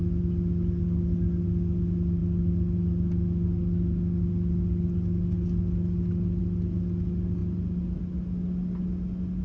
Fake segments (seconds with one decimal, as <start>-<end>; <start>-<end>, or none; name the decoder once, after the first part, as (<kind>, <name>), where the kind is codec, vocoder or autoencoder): none